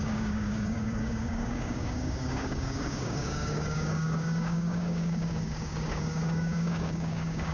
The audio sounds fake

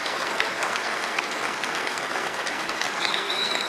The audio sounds fake